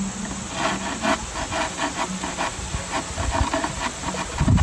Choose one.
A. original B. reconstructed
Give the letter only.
A